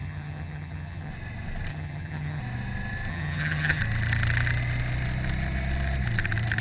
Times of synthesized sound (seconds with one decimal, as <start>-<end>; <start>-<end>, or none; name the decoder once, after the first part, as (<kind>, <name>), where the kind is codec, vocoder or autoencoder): 0.0-1.1 (vocoder, HiFi-GAN); 1.7-2.4; 3.1-3.8